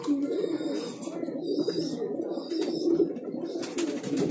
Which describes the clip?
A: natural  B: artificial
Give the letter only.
A